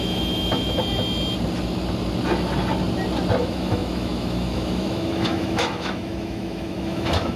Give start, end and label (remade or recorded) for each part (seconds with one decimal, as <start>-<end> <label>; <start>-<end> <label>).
0.0-0.8 remade; 0.8-3.4 recorded; 3.4-7.4 remade